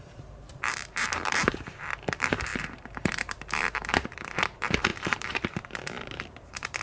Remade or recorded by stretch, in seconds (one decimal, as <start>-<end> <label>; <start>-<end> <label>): 0.0-6.8 remade